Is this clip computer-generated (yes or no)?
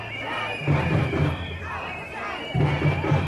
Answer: no